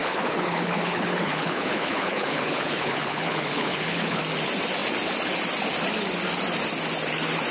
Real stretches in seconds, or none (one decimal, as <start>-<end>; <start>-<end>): 4.2-7.5